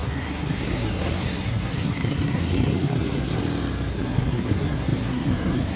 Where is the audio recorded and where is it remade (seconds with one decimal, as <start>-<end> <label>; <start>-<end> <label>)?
0.0-3.4 remade; 3.4-3.9 recorded; 3.9-5.8 remade